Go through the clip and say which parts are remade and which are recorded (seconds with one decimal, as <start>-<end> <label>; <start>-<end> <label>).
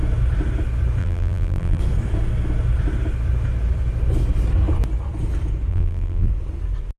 0.0-1.0 recorded; 1.0-1.8 remade; 1.8-5.7 recorded; 5.7-6.3 remade; 6.3-7.0 recorded